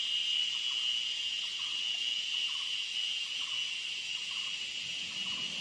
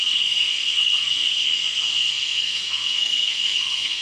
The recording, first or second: first